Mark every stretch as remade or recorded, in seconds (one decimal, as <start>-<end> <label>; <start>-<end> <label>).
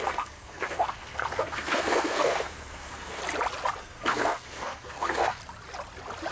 0.0-3.2 remade; 3.2-3.8 recorded; 3.8-5.4 remade; 5.4-6.3 recorded